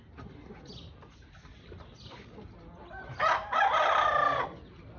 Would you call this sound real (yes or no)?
yes